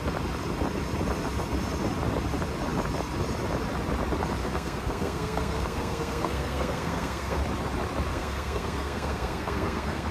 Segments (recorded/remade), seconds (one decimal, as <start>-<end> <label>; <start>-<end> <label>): 0.0-4.4 recorded; 4.4-7.4 remade; 7.4-8.1 recorded; 8.1-10.1 remade